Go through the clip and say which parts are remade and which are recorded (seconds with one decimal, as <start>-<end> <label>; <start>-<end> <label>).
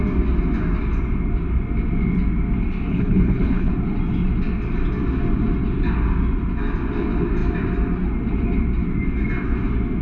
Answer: 0.0-2.9 recorded; 2.9-3.7 remade; 3.7-10.0 recorded